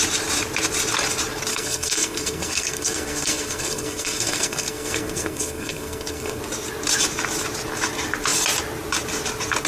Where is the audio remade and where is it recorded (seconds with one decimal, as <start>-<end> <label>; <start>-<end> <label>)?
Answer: 0.0-1.5 recorded; 1.5-6.4 remade; 6.4-9.7 recorded